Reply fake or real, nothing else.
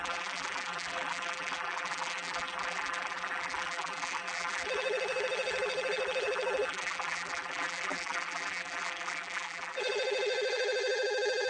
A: fake